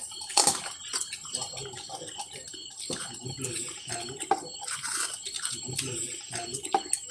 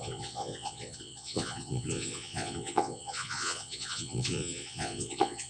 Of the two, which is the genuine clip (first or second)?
first